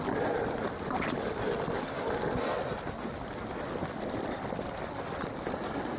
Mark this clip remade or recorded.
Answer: recorded